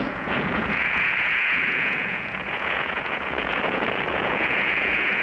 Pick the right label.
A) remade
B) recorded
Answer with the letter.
A